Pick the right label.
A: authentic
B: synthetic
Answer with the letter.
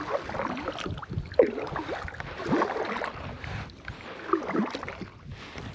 A